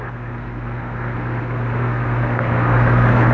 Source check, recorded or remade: remade